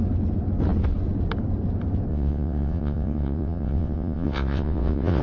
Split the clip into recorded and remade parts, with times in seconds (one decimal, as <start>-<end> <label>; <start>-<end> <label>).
0.0-2.1 recorded; 2.1-5.2 remade